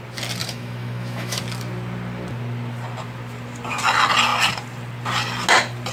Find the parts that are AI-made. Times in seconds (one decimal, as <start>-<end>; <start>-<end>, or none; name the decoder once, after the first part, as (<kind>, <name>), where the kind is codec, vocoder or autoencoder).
0.4-1.4 (autoencoder, DAC-VAE)